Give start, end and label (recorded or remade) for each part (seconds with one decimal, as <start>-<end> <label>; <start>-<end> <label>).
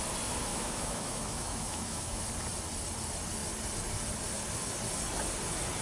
0.0-0.5 recorded; 0.5-2.2 remade; 2.2-5.8 recorded